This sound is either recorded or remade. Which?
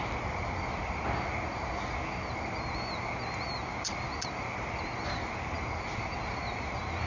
recorded